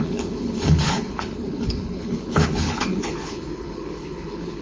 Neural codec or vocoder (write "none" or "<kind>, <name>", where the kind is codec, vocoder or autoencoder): codec, HILCodec